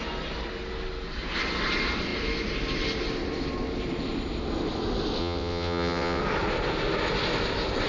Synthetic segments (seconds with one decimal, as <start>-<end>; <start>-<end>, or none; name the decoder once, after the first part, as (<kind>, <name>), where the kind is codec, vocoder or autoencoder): 5.2-6.2 (vocoder, WaveNeXt)